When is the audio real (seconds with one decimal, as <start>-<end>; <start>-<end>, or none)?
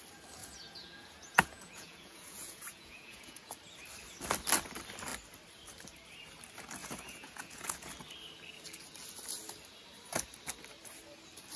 0.0-0.4; 3.5-6.8; 7.9-11.6